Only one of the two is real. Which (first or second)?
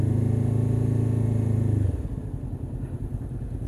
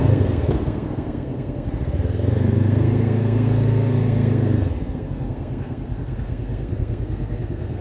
first